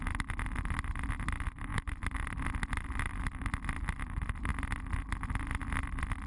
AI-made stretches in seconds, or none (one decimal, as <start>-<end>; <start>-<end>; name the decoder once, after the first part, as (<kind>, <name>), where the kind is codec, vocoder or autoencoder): none